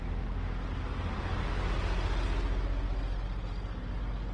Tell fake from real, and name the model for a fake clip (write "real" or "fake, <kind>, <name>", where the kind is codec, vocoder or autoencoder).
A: real